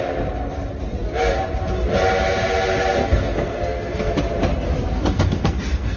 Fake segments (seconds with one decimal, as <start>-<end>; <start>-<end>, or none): 3.0-4.1; 4.9-6.0

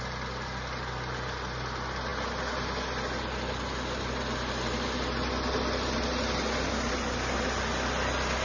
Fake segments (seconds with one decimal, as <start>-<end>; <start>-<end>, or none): none

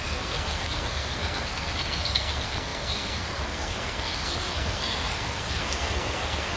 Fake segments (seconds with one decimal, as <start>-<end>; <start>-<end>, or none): 0.0-6.6

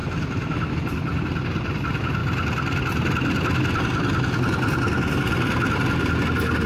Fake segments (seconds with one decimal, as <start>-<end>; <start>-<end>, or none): none

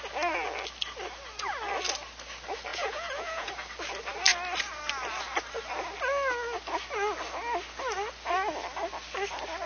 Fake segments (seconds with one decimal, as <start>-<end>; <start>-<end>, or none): 2.7-3.5

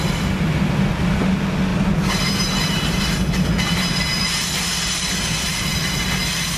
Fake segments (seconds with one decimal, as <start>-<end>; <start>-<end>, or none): none

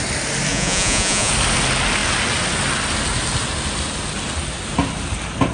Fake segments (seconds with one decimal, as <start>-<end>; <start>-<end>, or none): 0.5-1.3